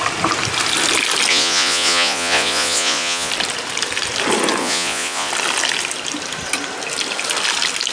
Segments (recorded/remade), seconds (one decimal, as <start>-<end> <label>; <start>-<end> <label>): 0.0-1.3 recorded; 1.3-3.3 remade; 3.3-4.6 recorded; 4.6-5.3 remade; 5.3-7.9 recorded